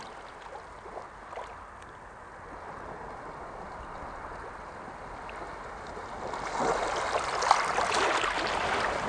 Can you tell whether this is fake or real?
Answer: real